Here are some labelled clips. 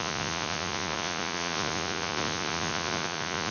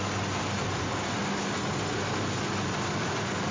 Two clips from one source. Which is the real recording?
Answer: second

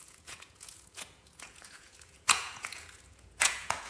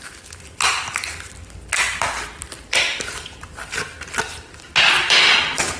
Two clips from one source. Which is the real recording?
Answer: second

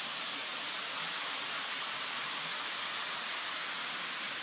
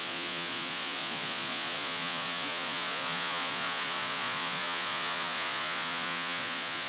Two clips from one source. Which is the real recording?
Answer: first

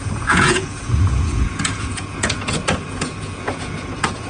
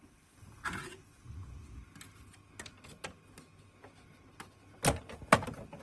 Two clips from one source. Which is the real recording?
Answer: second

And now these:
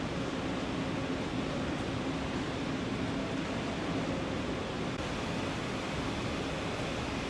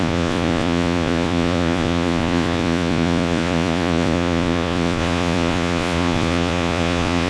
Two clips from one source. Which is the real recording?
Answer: first